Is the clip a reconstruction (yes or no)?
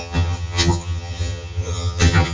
yes